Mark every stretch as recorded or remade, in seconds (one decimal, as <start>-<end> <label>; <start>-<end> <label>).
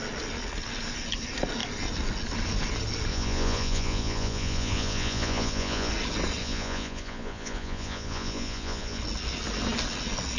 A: 0.0-3.1 recorded; 3.1-5.9 remade; 5.9-6.4 recorded; 6.4-9.0 remade; 9.0-10.4 recorded